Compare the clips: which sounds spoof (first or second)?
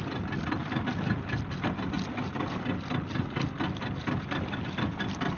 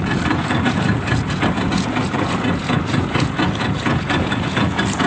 second